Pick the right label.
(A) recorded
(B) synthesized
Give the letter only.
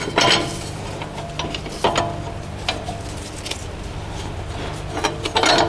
A